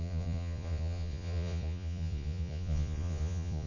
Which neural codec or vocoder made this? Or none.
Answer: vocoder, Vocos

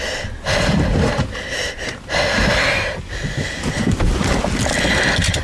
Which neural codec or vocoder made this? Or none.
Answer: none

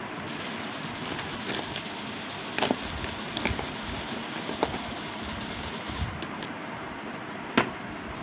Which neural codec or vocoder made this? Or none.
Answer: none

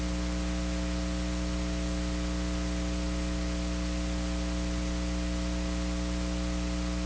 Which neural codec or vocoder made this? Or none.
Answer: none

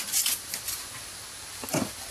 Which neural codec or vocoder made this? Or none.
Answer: none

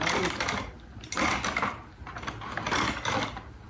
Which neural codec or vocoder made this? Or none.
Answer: none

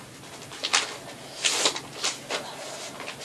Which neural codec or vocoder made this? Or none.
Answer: none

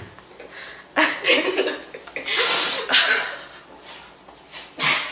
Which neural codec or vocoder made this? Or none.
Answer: none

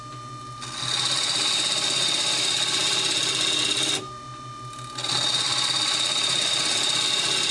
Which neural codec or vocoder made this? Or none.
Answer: none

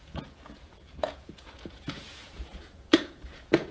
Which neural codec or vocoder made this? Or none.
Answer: vocoder, Vocos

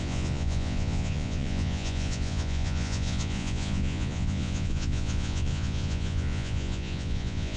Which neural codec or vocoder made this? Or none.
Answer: vocoder, Vocos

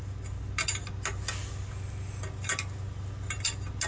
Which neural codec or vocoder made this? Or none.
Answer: none